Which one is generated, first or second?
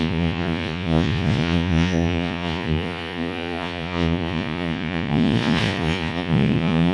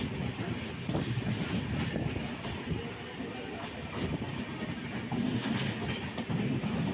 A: first